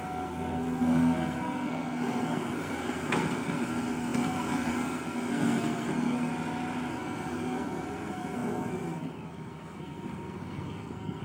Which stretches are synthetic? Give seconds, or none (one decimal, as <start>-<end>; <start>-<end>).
0.0-6.3; 6.9-11.2